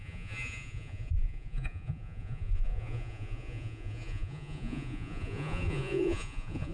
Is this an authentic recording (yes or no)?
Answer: no